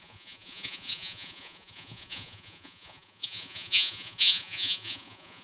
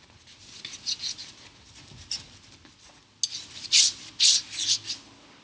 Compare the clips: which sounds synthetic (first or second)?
first